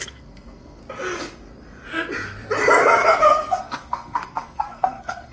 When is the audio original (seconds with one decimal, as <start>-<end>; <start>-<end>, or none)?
0.8-3.2